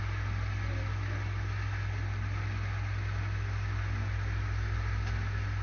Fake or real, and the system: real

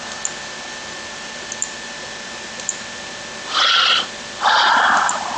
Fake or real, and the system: real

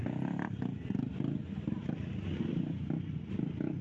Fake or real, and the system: real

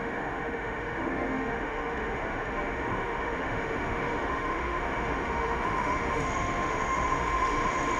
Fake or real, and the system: fake, autoencoder, DAC-VAE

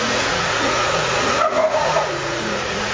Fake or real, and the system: fake, vocoder, Vocos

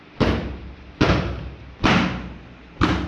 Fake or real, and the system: real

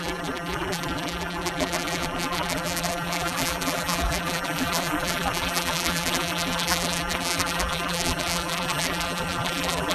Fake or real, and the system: fake, vocoder, BigVGAN v2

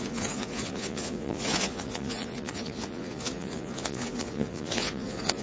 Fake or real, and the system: fake, vocoder, Vocos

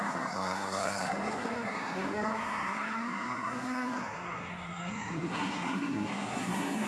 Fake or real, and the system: fake, codec, SNAC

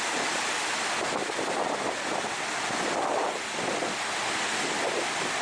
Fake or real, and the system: real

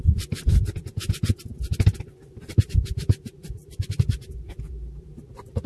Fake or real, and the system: real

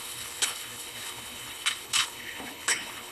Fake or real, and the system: fake, codec, HILCodec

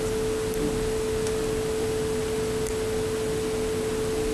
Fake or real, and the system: real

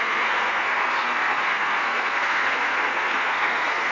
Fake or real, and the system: fake, codec, SNAC